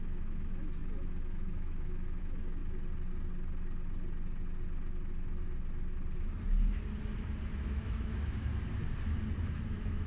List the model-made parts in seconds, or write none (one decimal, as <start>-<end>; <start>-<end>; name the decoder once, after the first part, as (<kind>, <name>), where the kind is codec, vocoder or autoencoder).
0.0-2.6 (autoencoder, DAC-VAE); 7.6-8.5; 9.7-10.1